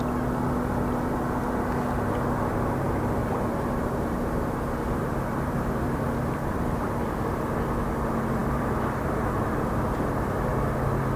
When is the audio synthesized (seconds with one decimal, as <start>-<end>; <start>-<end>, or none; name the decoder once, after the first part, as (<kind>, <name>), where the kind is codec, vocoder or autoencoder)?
3.2-7.1 (vocoder, BigVGAN v2); 8.4-9.7